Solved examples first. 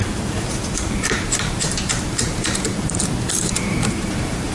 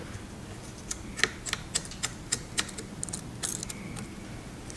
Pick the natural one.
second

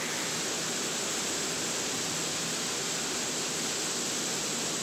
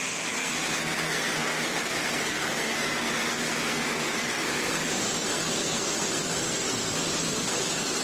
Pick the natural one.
first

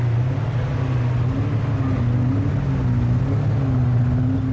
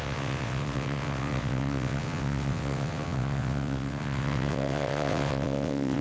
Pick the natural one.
first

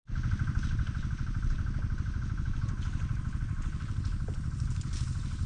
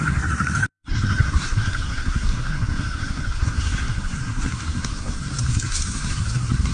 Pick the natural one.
first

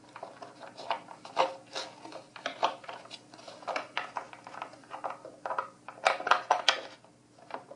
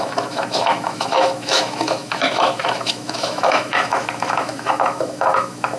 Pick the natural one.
first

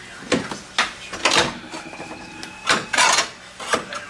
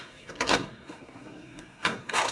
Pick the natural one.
first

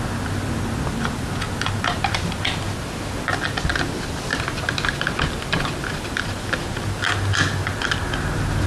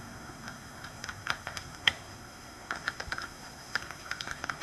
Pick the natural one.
first